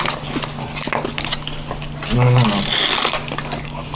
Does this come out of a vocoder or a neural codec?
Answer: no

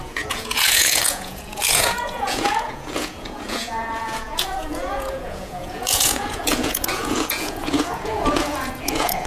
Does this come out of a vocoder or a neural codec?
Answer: yes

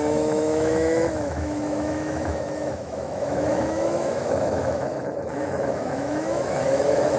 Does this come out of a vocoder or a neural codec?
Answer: yes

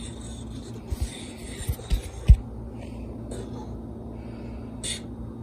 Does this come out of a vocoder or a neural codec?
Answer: no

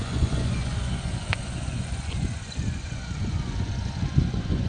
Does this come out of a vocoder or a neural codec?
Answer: yes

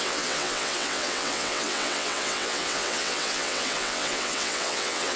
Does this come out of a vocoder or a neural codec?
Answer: yes